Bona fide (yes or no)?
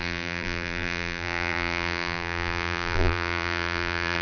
no